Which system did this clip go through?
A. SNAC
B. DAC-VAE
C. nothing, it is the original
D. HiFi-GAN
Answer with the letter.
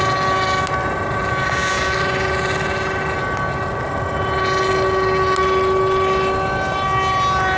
C